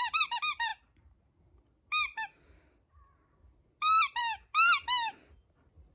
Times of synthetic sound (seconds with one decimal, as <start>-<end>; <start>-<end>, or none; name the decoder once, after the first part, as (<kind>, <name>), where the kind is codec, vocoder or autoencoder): none